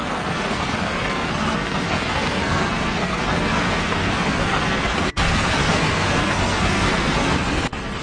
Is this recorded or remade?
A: remade